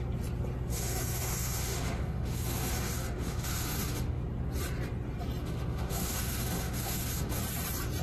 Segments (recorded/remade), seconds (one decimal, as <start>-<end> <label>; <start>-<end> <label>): 0.0-0.7 recorded; 0.7-4.2 remade; 4.2-5.4 recorded; 5.4-7.4 remade; 7.4-8.0 recorded